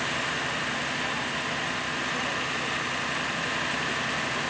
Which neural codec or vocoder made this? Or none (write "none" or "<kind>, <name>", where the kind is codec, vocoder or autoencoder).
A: none